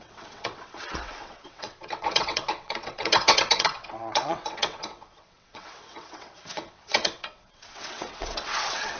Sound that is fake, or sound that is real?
fake